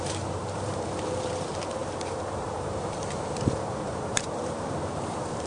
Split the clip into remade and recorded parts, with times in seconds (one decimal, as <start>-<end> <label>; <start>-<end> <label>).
0.0-5.5 remade